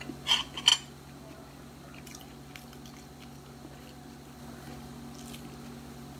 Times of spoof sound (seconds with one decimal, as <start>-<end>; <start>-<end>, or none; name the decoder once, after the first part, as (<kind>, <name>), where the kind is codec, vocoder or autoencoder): none